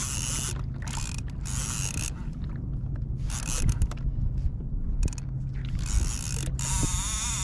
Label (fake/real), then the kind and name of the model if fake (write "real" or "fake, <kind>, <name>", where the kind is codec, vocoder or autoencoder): real